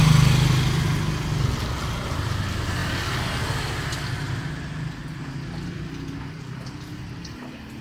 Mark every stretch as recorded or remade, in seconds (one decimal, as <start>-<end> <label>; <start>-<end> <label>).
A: 0.0-7.8 recorded